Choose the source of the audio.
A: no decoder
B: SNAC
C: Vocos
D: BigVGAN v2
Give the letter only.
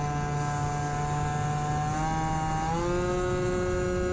A